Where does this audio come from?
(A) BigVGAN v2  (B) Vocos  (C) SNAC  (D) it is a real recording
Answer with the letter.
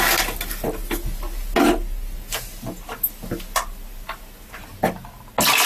D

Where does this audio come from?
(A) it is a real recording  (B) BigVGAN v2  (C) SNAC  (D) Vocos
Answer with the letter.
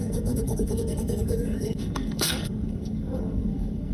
C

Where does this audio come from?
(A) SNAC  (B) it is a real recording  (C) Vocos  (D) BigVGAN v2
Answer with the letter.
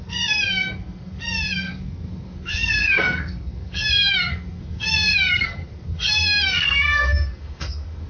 A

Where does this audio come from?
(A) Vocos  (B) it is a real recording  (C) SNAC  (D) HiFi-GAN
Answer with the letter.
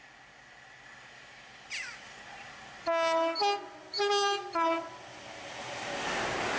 B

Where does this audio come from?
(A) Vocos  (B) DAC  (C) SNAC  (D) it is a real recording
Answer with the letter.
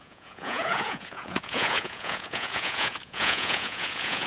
A